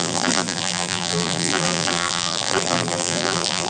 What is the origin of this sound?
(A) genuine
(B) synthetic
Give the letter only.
B